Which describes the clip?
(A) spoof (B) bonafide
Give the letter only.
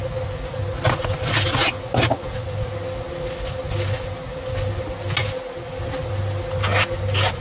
B